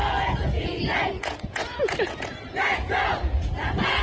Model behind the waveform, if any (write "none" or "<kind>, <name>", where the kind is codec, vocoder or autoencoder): vocoder, Vocos